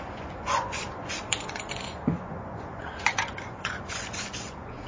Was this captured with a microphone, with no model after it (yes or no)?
no